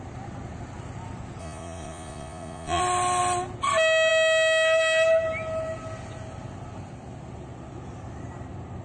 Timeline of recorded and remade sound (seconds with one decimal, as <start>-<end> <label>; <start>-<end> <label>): 0.0-1.4 recorded; 1.4-2.8 remade; 2.8-8.8 recorded